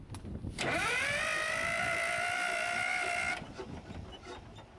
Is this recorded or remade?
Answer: remade